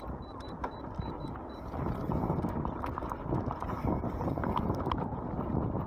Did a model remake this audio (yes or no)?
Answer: no